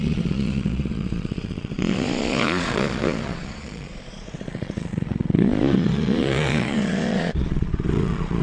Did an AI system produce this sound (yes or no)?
yes